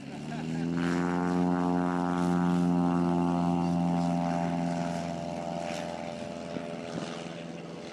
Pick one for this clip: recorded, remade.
recorded